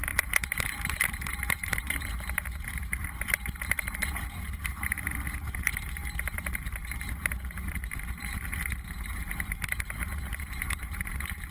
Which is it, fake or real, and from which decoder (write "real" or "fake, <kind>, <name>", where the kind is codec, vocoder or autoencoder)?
fake, vocoder, BigVGAN v2